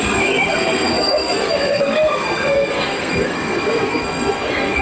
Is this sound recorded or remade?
remade